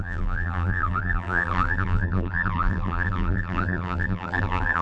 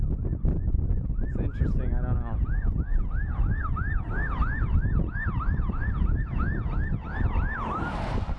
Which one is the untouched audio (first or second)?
second